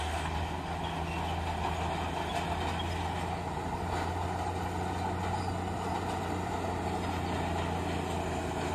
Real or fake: real